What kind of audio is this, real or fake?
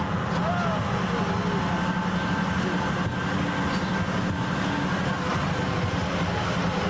real